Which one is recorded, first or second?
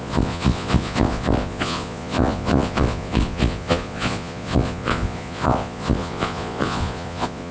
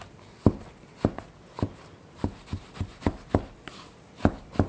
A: second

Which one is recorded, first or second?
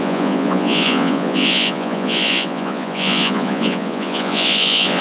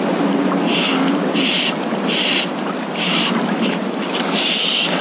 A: second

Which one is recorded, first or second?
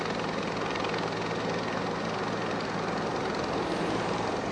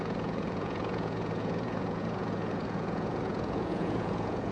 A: first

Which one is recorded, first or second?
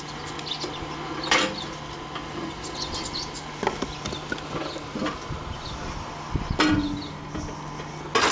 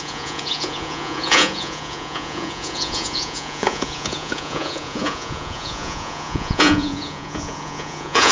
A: first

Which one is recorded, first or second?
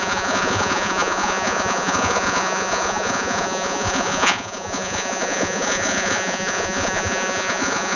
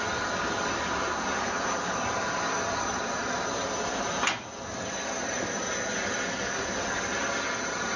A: second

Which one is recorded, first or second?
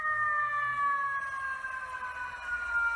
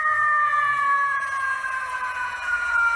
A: first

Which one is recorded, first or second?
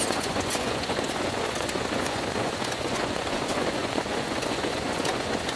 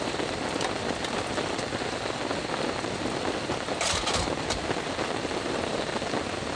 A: second